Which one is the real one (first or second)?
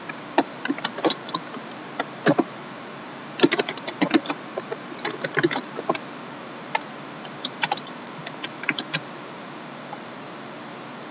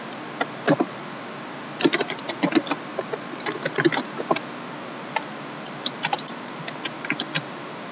second